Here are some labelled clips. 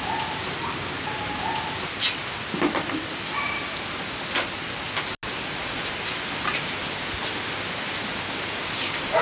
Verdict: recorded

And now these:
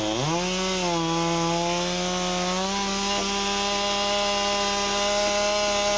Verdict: recorded